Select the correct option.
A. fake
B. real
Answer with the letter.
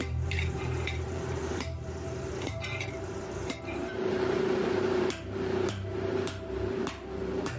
A